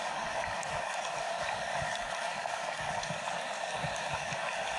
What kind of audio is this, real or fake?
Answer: fake